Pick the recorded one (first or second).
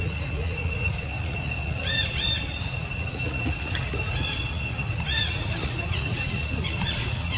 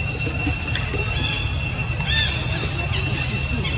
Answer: second